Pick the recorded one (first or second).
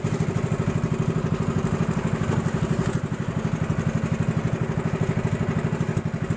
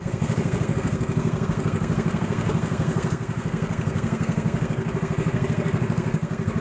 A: first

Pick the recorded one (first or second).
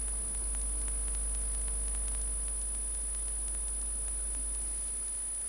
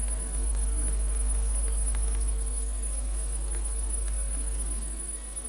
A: first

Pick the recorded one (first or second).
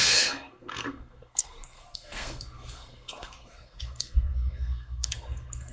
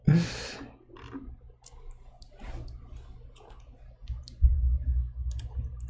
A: second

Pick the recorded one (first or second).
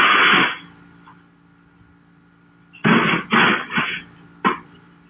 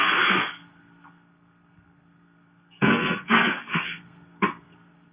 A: first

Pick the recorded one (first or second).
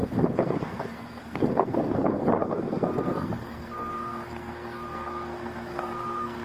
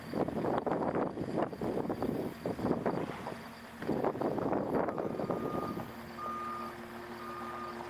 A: second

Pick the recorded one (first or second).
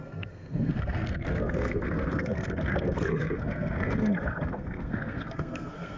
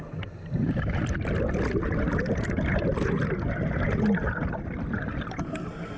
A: second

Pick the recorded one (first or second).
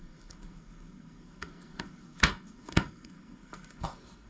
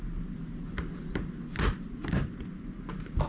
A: second